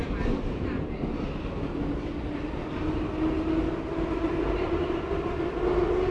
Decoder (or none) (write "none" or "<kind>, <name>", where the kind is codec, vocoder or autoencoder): none